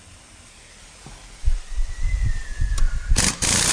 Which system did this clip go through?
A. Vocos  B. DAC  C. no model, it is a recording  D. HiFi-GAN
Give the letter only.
C